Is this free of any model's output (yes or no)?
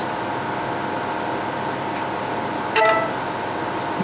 yes